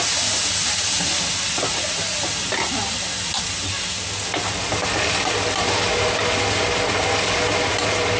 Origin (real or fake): real